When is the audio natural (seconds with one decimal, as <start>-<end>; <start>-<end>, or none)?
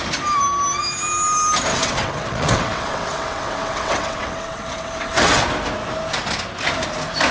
0.0-1.7; 5.4-7.3